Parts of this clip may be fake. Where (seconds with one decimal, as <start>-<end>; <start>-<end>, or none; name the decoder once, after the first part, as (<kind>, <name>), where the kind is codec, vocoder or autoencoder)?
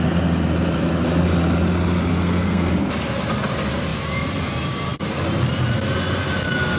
2.1-2.7 (codec, SNAC)